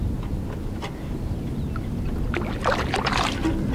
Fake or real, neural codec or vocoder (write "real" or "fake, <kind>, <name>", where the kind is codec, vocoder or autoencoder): real